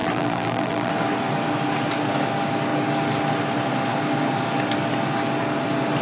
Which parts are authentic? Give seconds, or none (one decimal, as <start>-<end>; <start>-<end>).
0.9-6.0

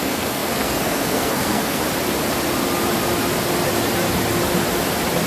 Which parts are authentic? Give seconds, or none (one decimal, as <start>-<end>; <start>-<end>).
1.8-5.3

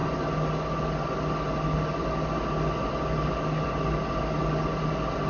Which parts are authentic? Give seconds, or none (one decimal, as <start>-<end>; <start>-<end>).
0.0-5.3

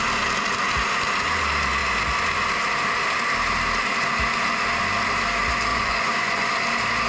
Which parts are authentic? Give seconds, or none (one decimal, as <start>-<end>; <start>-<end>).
0.0-5.7; 6.5-7.1

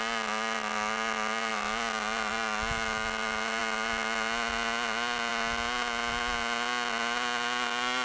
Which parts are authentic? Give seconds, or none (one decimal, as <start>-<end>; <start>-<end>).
0.0-8.0